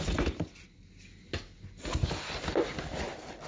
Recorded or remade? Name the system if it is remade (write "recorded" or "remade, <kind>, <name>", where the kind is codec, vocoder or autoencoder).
recorded